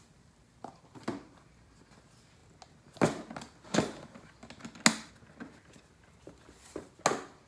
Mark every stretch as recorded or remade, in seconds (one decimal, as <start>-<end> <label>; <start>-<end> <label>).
0.0-7.5 recorded